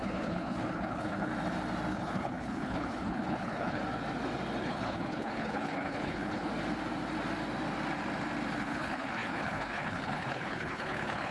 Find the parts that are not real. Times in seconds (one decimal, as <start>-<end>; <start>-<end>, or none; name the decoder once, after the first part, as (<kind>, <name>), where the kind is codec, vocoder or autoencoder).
0.0-1.3 (codec, HILCodec); 1.9-3.8; 4.6-6.5; 8.6-11.3